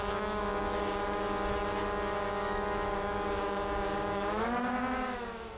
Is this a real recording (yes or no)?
no